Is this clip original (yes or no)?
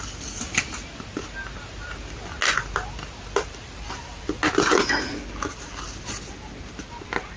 yes